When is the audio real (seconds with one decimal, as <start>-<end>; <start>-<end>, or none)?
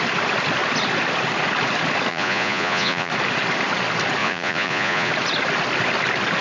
0.0-2.1; 3.1-4.2; 5.1-6.4